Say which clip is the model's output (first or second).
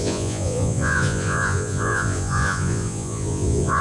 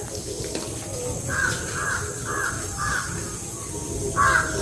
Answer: first